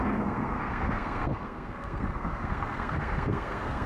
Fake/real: fake